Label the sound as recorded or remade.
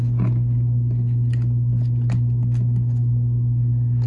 recorded